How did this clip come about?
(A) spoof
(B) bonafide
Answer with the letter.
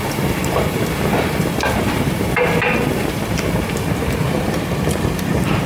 A